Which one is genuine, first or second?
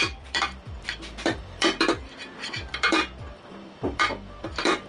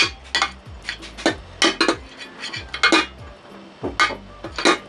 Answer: second